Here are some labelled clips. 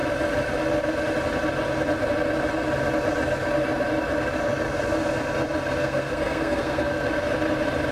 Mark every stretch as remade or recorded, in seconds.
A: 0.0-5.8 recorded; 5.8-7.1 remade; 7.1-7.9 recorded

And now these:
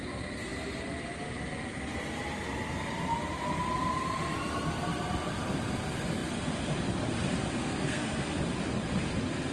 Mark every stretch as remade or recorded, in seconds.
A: 0.0-7.6 recorded; 7.6-8.4 remade; 8.4-9.5 recorded

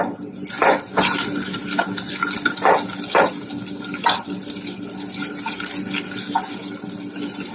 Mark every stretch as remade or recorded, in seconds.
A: 0.0-7.5 recorded

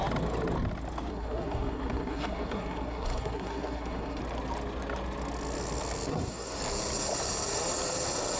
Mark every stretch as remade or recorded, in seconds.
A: 0.0-1.1 recorded; 1.1-4.2 remade; 4.2-6.1 recorded; 6.1-6.6 remade; 6.6-8.4 recorded

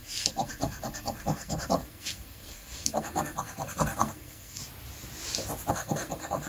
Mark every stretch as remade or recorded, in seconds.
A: 0.0-4.6 remade; 4.6-5.7 recorded; 5.7-6.5 remade

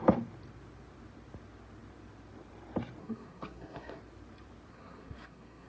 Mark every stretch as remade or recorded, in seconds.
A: 0.0-3.0 recorded; 3.0-4.0 remade; 4.0-4.7 recorded; 4.7-5.7 remade